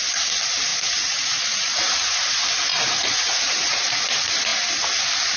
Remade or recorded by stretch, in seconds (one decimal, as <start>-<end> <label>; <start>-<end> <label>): 0.0-0.7 recorded; 0.7-2.3 remade; 2.3-2.7 recorded; 2.7-4.0 remade; 4.0-5.4 recorded